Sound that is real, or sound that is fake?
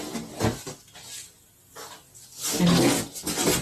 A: real